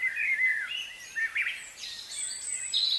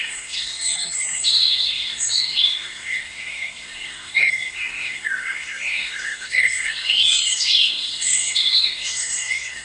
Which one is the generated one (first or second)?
second